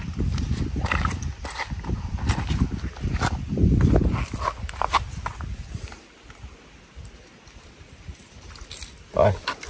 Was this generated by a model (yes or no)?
no